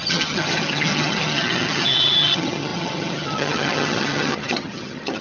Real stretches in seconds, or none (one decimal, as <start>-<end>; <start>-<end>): none